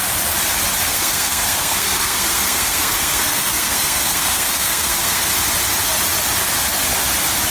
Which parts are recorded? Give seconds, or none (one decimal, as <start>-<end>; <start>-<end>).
0.0-0.9; 5.3-7.5